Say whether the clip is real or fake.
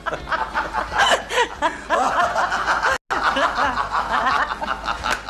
real